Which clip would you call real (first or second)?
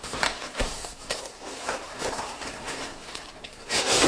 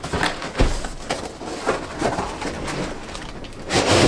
second